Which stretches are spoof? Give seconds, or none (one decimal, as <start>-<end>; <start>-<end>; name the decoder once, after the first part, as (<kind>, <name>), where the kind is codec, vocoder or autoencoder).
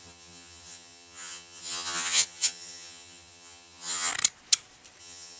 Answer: 0.0-4.1 (vocoder, HiFi-GAN); 5.0-5.4